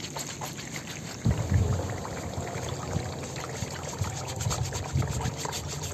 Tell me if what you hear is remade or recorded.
recorded